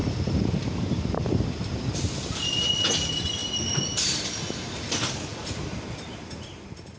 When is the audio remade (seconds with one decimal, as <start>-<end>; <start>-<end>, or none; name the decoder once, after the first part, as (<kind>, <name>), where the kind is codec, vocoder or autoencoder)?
0.0-2.6 (vocoder, BigVGAN v2); 5.3-6.1